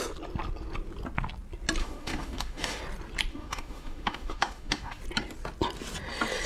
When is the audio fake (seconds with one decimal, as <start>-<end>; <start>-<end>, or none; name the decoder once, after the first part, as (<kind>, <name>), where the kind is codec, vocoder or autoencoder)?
1.8-2.8 (autoencoder, DAC-VAE); 3.3-5.0